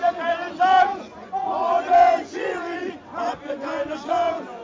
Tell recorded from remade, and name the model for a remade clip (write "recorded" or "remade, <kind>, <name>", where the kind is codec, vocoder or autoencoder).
remade, vocoder, Vocos